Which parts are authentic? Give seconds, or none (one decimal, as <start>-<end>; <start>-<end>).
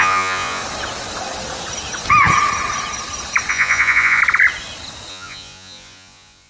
0.6-3.5; 4.2-5.1